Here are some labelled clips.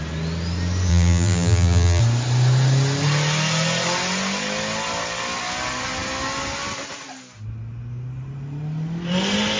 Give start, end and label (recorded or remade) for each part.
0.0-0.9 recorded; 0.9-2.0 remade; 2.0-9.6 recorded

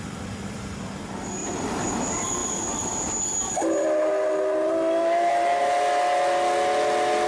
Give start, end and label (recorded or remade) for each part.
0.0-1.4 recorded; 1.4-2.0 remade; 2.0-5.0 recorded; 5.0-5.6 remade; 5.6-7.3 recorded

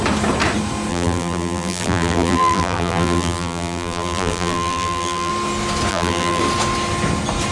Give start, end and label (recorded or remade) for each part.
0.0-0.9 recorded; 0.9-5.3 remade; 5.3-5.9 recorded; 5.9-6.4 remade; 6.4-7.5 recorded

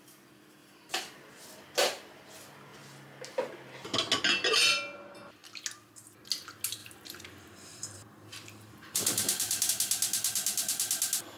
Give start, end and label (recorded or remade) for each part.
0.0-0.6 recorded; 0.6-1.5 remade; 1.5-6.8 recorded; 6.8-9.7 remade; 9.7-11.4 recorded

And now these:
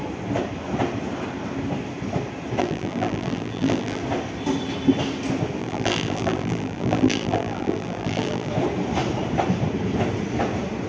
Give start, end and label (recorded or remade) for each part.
0.0-2.6 recorded; 2.6-4.0 remade; 4.0-5.6 recorded; 5.6-8.5 remade; 8.5-10.9 recorded

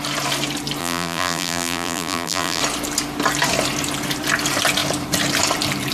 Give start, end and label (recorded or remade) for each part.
0.0-0.8 recorded; 0.8-2.6 remade; 2.6-5.9 recorded

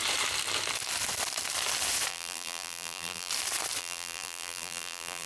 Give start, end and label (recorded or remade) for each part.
0.0-2.1 recorded; 2.1-3.3 remade; 3.3-3.8 recorded; 3.8-5.3 remade

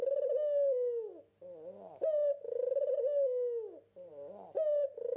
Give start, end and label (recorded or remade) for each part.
0.0-5.2 recorded